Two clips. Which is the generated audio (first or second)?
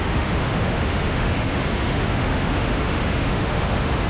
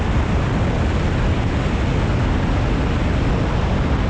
first